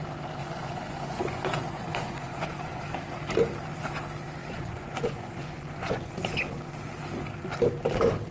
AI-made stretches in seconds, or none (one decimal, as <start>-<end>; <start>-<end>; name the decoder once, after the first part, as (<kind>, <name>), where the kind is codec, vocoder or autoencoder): 0.4-2.8 (vocoder, Vocos); 4.4-6.1